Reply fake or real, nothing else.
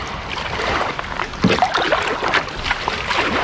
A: real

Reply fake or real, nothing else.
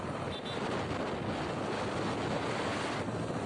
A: real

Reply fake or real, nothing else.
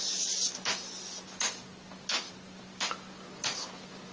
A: real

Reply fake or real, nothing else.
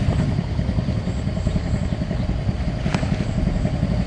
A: real